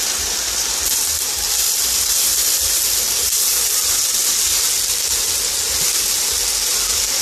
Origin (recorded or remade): recorded